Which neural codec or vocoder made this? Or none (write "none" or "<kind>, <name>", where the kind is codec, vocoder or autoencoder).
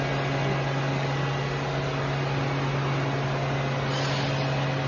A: none